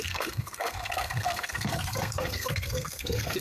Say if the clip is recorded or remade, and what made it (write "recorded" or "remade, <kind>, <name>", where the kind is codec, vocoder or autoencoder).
remade, codec, SNAC